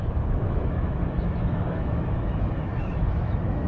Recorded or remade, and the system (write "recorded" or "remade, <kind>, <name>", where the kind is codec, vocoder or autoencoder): remade, autoencoder, DAC-VAE